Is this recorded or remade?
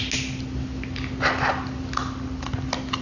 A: recorded